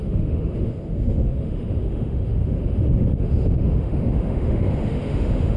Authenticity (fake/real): fake